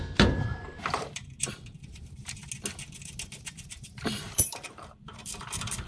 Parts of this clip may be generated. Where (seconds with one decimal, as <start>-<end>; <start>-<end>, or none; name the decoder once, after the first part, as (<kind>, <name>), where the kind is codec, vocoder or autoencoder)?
0.0-2.4 (vocoder, BigVGAN v2); 3.5-5.9